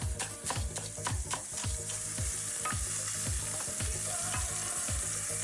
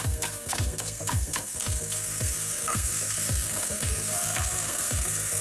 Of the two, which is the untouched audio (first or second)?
first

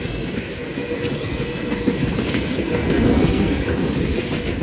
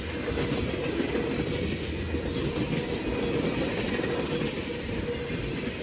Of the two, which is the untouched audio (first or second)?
second